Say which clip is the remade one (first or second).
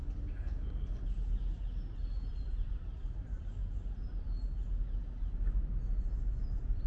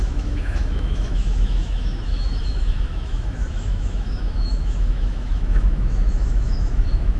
second